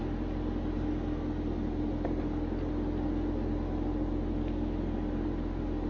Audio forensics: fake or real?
real